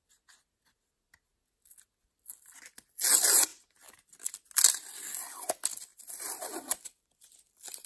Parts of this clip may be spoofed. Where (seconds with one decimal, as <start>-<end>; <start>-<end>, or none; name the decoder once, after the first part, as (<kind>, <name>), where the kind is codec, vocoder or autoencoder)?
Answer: 5.9-7.9 (vocoder, BigVGAN v2)